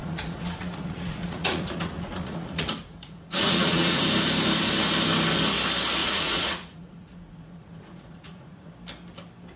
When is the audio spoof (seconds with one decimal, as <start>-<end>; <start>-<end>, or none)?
0.0-4.0; 6.0-8.7